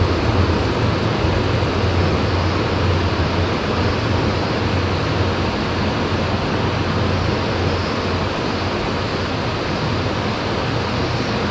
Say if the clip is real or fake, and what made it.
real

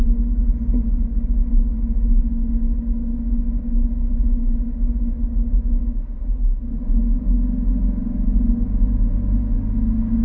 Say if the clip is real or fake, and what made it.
real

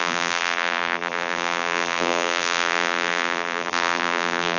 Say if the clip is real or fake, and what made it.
fake, vocoder, BigVGAN v2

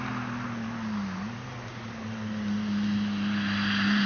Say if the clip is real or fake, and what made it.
real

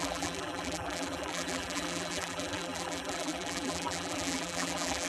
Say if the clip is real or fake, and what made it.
fake, vocoder, BigVGAN v2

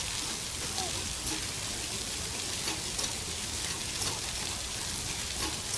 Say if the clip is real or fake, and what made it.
real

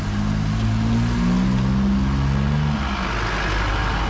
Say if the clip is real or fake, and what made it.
real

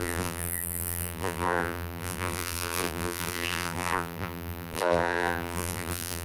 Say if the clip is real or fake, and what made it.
fake, vocoder, BigVGAN v2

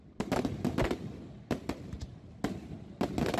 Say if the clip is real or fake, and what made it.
real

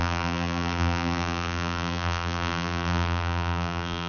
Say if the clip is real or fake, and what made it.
fake, vocoder, BigVGAN v2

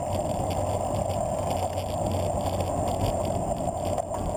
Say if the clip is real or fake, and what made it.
real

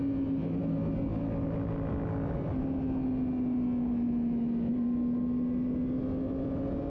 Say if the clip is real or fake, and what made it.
real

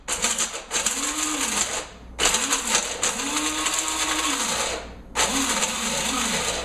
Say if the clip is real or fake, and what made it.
real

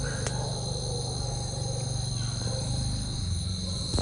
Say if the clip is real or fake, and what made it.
real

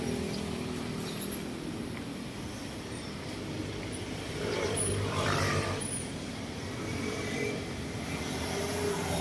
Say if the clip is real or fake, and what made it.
fake, vocoder, BigVGAN v2